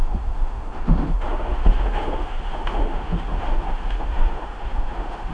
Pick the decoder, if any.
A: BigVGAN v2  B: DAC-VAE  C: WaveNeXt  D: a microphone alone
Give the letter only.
B